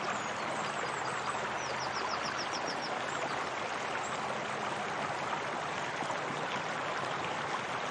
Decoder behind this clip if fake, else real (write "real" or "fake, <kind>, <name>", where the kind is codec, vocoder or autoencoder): real